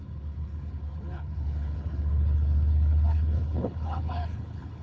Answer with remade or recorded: remade